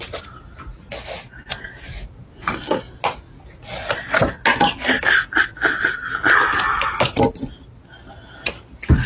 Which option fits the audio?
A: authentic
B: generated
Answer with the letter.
A